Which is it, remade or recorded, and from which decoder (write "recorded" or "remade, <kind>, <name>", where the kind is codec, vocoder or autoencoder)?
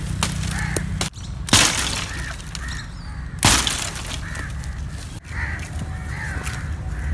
recorded